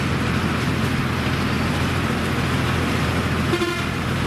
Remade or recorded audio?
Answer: recorded